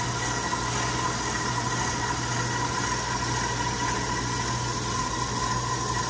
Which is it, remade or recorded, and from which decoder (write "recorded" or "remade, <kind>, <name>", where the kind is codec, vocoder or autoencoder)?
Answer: recorded